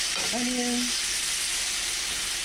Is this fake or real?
real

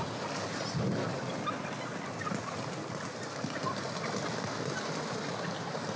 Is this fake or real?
real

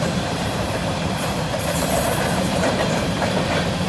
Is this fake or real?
fake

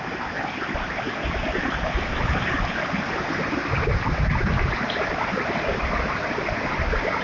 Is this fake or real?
real